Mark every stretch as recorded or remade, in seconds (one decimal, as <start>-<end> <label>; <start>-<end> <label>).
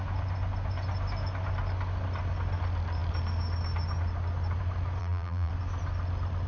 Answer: 0.0-5.0 recorded; 5.0-5.5 remade; 5.5-6.5 recorded